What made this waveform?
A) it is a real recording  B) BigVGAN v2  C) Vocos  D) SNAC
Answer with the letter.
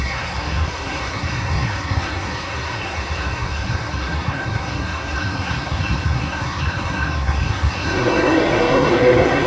D